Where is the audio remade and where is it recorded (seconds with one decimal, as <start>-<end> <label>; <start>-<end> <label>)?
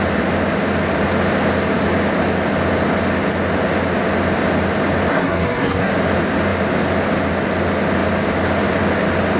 0.0-5.1 recorded; 5.1-5.9 remade; 5.9-9.4 recorded